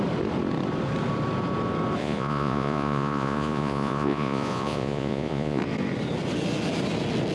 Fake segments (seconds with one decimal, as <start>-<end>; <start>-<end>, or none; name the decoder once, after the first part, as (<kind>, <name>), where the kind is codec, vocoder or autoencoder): 2.0-5.6 (vocoder, Vocos)